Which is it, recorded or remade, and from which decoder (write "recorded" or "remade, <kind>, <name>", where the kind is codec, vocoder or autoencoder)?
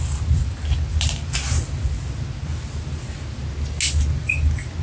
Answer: recorded